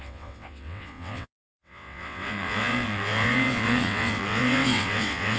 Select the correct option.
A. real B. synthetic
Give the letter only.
B